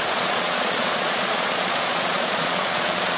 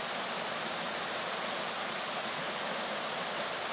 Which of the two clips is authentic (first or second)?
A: second